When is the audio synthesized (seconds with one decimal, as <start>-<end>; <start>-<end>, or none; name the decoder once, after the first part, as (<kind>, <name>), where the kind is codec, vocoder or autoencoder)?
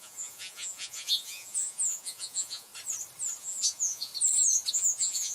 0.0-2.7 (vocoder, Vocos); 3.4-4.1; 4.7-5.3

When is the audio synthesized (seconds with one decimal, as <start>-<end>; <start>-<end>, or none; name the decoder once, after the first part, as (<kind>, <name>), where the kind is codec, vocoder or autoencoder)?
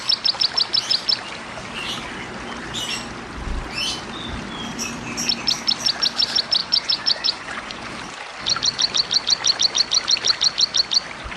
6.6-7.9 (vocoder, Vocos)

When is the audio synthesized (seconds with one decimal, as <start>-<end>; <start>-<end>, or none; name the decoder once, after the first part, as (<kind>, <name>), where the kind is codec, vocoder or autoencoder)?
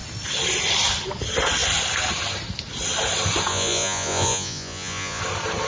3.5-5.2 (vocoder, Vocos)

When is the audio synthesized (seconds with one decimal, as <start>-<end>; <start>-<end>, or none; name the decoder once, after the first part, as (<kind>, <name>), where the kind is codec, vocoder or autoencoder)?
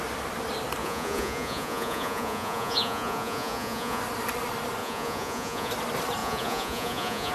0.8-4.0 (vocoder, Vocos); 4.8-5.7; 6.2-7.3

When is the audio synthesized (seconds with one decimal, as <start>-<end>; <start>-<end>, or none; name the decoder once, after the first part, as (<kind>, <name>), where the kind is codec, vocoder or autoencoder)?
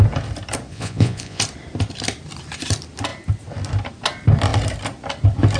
0.7-1.4 (vocoder, Vocos)